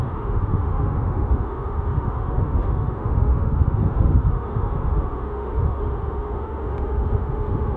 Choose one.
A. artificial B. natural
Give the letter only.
A